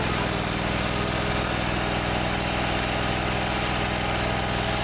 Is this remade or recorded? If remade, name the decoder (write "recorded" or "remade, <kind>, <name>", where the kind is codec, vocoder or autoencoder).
recorded